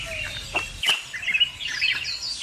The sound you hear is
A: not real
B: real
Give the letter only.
B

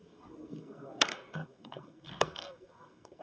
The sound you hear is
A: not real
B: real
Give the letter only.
A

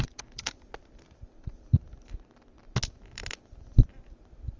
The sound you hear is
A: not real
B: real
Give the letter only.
B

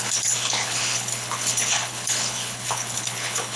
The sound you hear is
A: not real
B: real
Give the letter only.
A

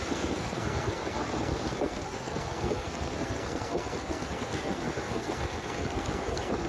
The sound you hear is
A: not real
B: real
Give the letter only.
A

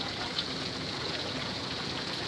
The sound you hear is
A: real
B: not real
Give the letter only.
B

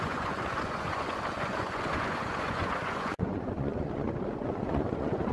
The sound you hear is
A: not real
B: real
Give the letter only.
A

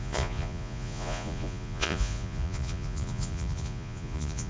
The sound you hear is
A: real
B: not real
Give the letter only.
B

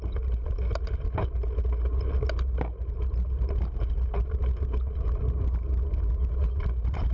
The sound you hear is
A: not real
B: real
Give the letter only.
B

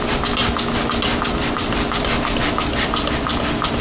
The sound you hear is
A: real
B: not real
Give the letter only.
A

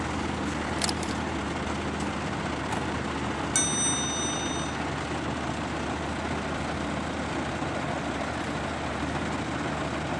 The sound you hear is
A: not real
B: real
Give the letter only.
B